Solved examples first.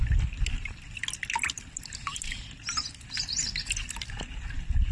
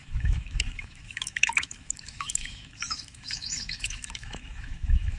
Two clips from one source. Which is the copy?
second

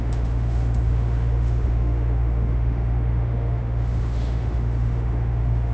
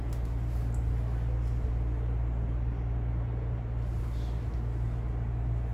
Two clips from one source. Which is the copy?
first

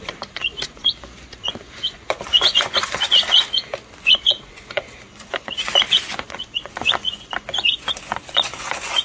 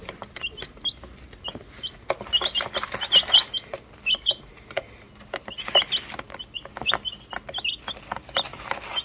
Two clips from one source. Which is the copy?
first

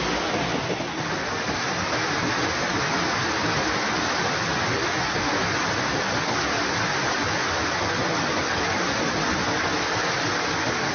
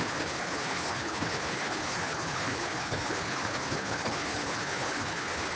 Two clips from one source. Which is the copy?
second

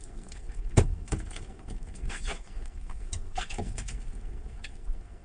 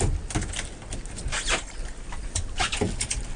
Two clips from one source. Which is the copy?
first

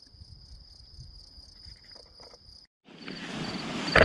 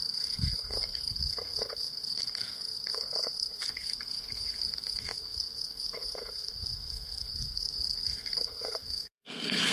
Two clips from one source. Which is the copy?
second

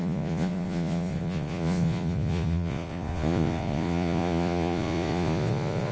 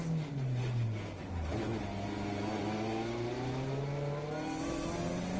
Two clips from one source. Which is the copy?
first